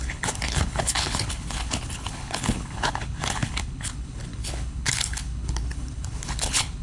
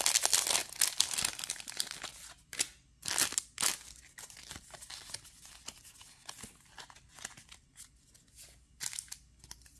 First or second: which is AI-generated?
first